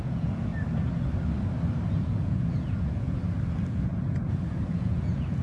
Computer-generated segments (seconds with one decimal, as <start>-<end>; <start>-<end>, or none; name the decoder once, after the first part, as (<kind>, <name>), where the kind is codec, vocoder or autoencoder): 0.0-0.5 (vocoder, Vocos); 1.9-3.2; 3.7-5.4